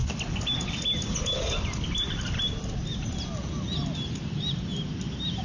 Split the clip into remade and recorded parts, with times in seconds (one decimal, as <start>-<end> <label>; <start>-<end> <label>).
0.0-5.4 recorded